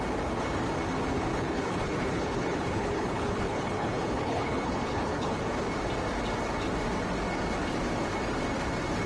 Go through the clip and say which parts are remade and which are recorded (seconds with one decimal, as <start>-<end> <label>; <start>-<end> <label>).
0.0-1.3 recorded; 1.3-5.4 remade; 5.4-9.1 recorded